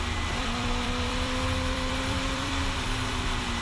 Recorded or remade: remade